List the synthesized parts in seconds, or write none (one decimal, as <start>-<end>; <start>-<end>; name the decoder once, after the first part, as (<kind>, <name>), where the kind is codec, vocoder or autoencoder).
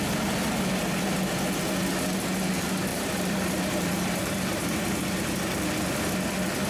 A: 2.9-5.0 (vocoder, BigVGAN v2)